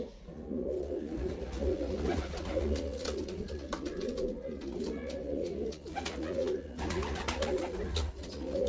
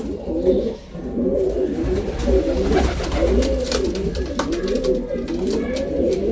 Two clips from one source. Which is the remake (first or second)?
first